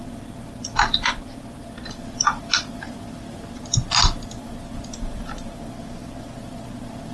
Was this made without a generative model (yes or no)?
yes